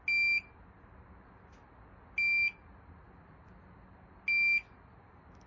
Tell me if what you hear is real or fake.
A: real